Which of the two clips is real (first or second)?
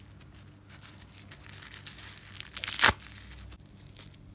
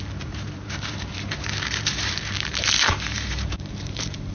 first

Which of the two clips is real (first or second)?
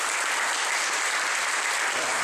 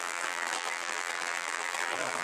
first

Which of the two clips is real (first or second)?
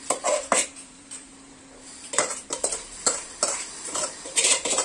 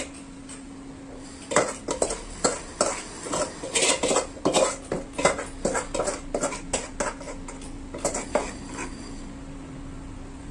second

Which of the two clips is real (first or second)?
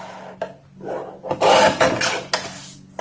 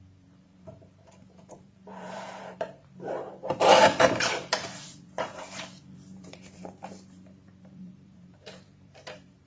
first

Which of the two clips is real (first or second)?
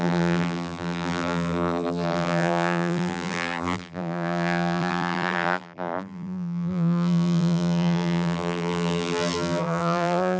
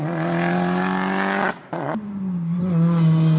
second